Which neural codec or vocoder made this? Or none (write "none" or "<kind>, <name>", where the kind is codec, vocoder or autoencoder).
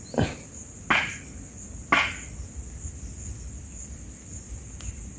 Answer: none